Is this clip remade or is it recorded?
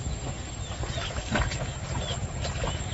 recorded